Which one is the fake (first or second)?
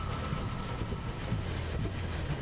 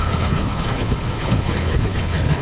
second